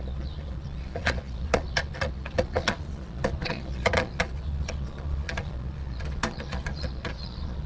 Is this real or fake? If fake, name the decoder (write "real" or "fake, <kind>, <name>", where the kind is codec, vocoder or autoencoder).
fake, vocoder, Vocos